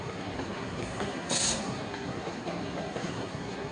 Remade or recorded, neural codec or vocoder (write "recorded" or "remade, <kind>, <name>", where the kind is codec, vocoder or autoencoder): remade, codec, SNAC